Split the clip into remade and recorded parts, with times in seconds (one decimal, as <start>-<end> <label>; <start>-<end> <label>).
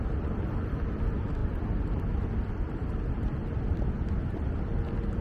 0.0-5.2 recorded